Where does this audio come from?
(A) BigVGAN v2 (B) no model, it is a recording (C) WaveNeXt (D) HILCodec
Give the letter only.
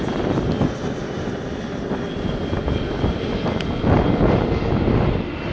B